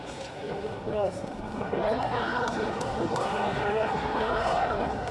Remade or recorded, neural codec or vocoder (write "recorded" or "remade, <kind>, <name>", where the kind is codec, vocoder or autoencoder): remade, codec, SNAC